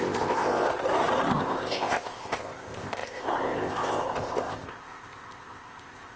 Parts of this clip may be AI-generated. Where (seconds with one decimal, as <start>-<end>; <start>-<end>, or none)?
0.0-0.7; 1.3-6.2